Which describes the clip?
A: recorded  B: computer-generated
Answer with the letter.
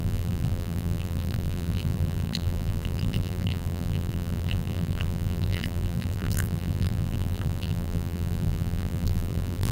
B